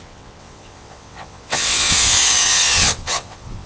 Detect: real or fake fake